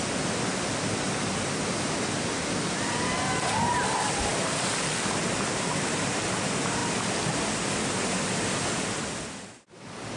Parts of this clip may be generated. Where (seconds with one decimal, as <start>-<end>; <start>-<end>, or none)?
none